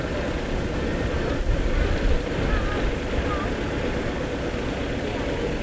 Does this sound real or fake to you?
real